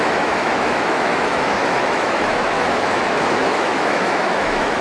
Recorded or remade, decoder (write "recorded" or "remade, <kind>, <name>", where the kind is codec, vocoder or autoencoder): remade, autoencoder, DAC-VAE